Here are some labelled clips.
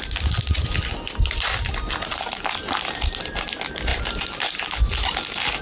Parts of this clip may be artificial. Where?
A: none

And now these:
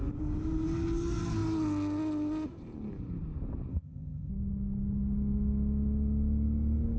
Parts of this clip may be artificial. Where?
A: 3.7-4.3 (codec, ZipCodec)